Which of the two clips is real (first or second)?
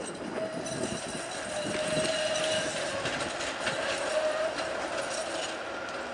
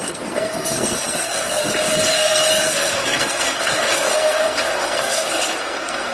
first